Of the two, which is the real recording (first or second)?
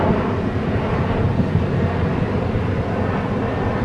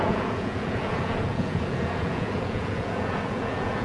first